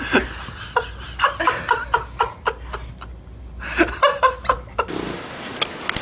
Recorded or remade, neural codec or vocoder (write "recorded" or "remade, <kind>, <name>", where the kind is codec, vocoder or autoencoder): recorded